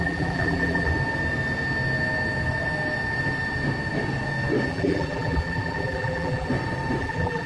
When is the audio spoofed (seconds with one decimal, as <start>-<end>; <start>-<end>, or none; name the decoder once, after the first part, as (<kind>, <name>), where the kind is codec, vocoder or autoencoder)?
0.0-0.9 (vocoder, BigVGAN v2); 4.7-6.5; 7.0-7.5